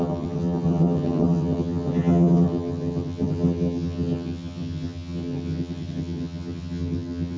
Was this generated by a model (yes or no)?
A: yes